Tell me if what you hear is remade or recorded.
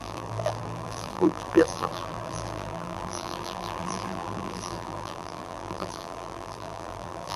remade